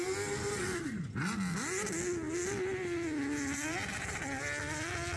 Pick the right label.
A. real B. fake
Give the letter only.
A